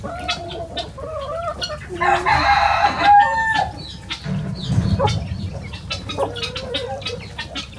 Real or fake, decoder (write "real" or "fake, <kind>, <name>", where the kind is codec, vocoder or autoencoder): real